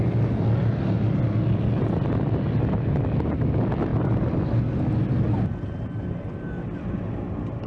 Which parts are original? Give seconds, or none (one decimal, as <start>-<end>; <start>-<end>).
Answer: 0.0-7.7